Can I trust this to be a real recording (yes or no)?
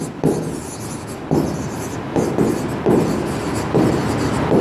yes